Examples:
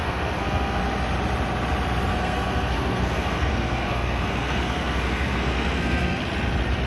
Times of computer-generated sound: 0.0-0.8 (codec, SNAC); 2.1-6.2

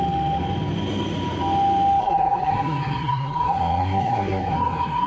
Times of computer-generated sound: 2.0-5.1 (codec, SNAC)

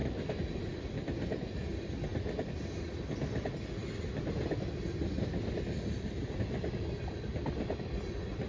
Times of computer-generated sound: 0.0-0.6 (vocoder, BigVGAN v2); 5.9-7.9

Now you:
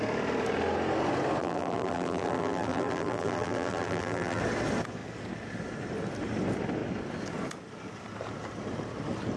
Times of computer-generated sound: 1.4-4.4 (vocoder, BigVGAN v2)

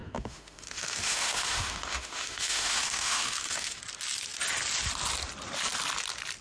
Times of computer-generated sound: 0.0-3.8 (autoencoder, DAC-VAE)